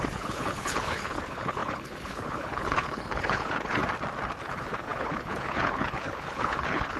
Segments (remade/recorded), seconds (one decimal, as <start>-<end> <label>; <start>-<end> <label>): 0.0-3.8 remade; 3.8-4.4 recorded; 4.4-7.0 remade